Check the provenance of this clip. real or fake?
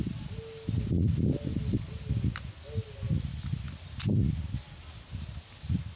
real